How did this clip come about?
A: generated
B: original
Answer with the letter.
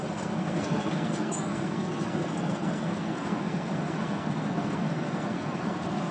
A